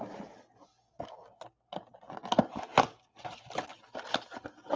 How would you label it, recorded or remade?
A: recorded